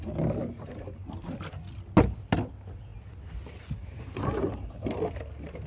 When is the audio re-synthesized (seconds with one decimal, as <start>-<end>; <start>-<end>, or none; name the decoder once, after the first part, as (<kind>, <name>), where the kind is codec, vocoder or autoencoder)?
none